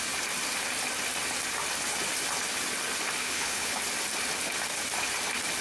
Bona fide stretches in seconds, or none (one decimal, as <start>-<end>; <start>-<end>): 0.0-3.2; 3.8-5.6